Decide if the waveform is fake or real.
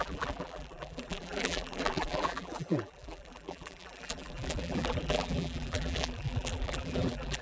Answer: fake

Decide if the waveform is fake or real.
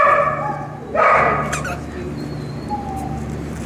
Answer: fake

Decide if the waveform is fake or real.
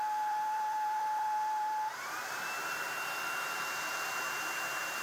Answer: fake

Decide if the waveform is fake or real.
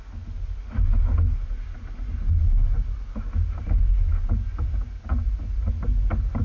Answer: real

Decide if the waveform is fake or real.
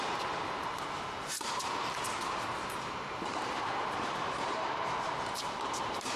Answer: fake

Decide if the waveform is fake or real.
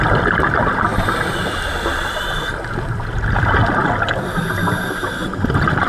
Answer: real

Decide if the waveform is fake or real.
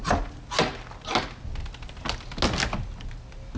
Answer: real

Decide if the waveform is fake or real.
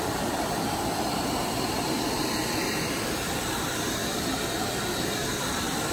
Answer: fake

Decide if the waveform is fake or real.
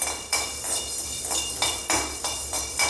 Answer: fake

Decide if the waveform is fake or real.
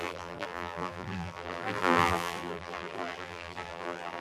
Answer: fake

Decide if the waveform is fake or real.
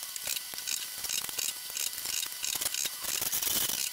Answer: fake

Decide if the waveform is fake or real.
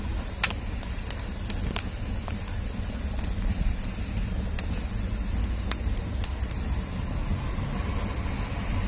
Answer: real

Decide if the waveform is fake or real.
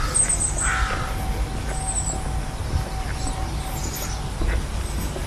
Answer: real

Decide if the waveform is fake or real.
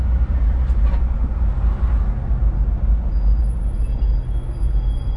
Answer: real